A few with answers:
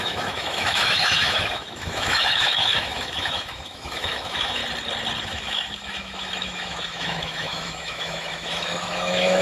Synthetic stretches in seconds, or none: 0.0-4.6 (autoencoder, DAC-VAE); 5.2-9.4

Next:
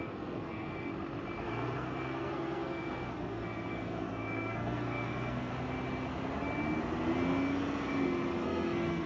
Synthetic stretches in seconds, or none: 0.0-0.9 (codec, SNAC); 1.4-5.5; 8.4-9.1

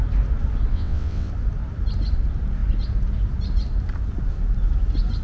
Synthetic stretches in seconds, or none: 0.7-1.3 (vocoder, WaveNeXt)

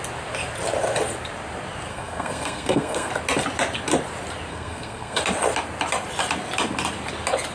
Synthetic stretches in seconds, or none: 1.9-3.1 (codec, SNAC); 4.5-5.2

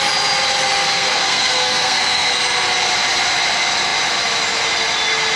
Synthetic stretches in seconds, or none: 0.8-2.3 (codec, SNAC)

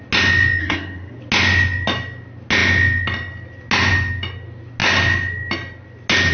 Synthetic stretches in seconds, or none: 0.6-1.2 (codec, SNAC)